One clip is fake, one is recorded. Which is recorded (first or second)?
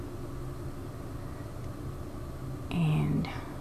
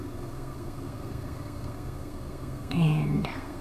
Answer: first